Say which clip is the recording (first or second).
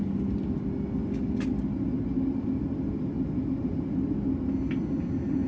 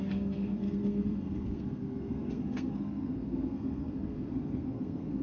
first